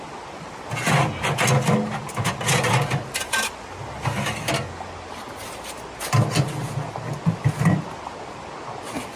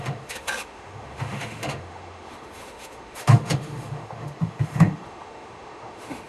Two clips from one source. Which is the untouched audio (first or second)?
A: first